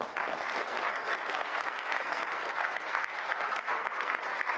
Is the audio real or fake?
fake